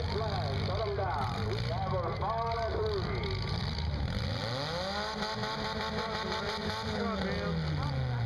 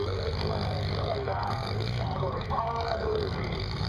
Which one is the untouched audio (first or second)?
first